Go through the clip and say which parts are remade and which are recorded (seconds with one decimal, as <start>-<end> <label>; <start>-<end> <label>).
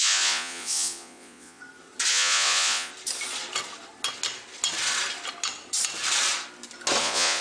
0.0-1.6 remade; 1.6-2.1 recorded; 2.1-2.9 remade; 2.9-7.0 recorded; 7.0-7.4 remade